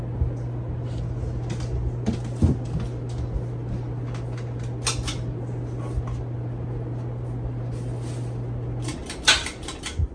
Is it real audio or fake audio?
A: real